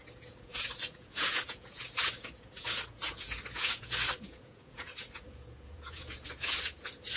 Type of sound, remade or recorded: remade